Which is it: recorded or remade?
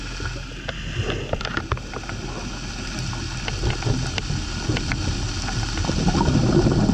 recorded